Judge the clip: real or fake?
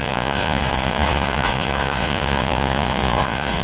fake